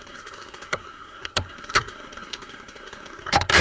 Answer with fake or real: fake